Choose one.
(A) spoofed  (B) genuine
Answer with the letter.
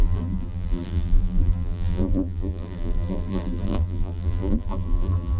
A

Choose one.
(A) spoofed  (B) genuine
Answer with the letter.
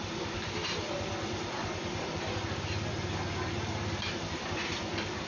B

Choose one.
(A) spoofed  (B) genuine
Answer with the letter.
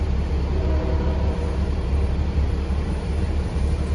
A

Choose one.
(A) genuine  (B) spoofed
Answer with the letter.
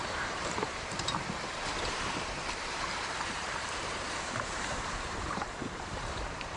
B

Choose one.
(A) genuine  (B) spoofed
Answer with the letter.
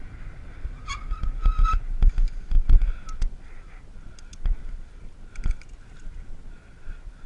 A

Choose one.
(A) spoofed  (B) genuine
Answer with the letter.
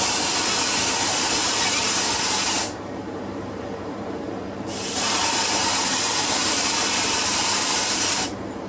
A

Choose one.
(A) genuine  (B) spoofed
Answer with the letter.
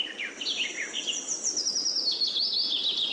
A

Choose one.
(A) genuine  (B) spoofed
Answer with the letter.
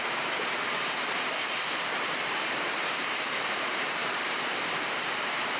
B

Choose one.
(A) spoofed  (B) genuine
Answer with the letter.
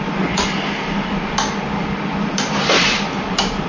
A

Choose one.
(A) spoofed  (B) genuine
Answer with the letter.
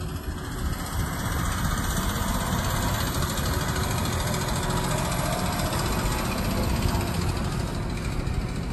B